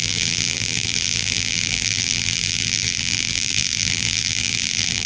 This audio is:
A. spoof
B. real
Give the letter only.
A